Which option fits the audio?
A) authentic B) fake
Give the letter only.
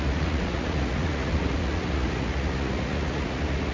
B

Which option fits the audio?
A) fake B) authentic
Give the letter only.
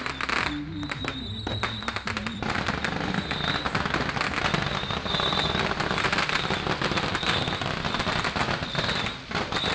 B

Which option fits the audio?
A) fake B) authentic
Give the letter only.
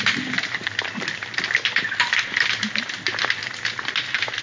B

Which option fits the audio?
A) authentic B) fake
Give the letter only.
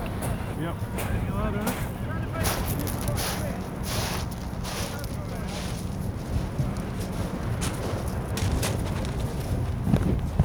A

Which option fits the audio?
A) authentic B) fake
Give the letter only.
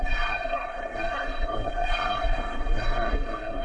B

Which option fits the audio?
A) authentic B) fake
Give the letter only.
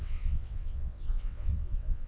B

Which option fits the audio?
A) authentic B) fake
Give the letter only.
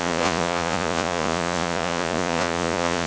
B